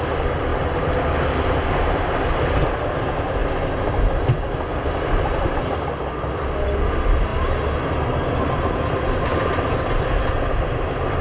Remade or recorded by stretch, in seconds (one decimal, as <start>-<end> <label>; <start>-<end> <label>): 0.0-3.4 recorded; 3.4-3.9 remade; 3.9-11.2 recorded